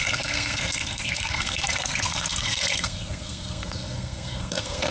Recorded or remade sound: remade